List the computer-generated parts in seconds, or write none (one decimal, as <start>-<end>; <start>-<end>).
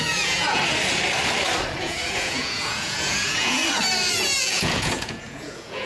0.0-0.6; 1.8-3.6; 4.1-5.9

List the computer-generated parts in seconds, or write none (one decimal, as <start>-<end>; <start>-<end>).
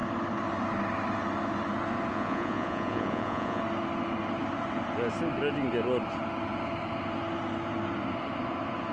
2.1-3.6